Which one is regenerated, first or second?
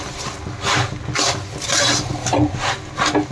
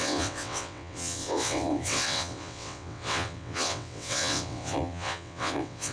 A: second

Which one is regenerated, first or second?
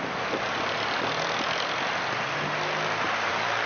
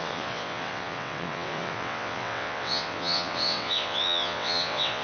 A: second